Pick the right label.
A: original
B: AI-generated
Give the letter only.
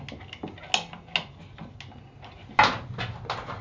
A